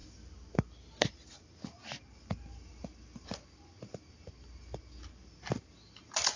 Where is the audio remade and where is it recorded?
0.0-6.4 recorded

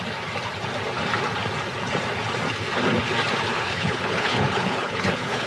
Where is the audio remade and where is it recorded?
0.0-3.5 recorded; 3.5-5.5 remade

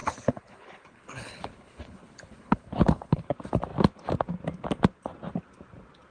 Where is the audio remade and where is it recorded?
0.0-3.3 remade; 3.3-6.1 recorded

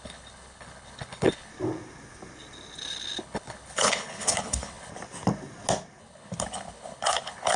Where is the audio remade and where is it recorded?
0.0-1.5 remade; 1.5-3.2 recorded; 3.2-4.9 remade; 4.9-6.0 recorded; 6.0-7.6 remade